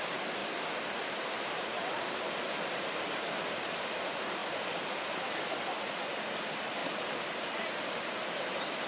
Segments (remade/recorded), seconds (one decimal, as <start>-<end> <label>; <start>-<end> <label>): 0.0-0.4 recorded; 0.4-3.8 remade; 3.8-4.4 recorded; 4.4-5.5 remade; 5.5-6.8 recorded; 6.8-8.3 remade; 8.3-8.9 recorded